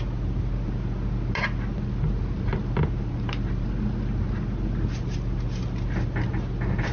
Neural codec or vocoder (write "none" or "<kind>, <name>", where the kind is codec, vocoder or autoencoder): none